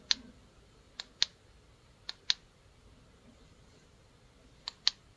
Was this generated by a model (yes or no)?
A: no